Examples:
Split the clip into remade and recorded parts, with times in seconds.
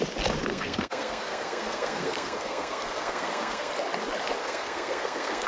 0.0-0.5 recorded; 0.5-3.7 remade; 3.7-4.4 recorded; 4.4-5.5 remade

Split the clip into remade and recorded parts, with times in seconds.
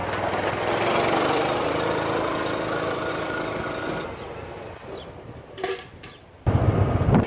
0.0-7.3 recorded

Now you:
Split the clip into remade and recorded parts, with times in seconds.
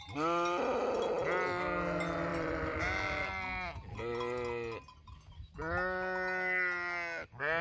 0.0-2.3 recorded; 2.3-2.8 remade; 2.8-7.6 recorded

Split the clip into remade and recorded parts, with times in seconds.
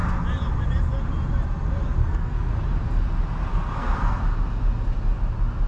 0.0-2.0 recorded; 2.0-2.5 remade; 2.5-3.5 recorded; 3.5-4.2 remade; 4.2-5.7 recorded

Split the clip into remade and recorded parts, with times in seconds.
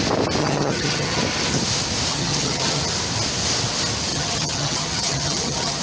0.0-0.4 recorded; 0.4-1.2 remade; 1.2-2.1 recorded; 2.1-2.8 remade; 2.8-4.1 recorded; 4.1-5.8 remade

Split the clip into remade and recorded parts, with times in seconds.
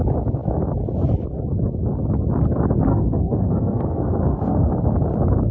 0.0-2.9 recorded; 2.9-4.7 remade; 4.7-5.5 recorded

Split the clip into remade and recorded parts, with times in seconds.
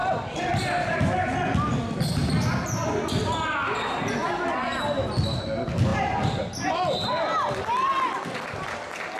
0.0-0.6 remade; 0.6-4.2 recorded; 4.2-4.8 remade; 4.8-9.2 recorded